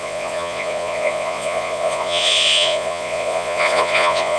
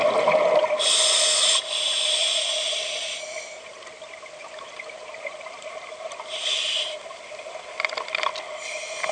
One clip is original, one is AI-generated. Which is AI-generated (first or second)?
first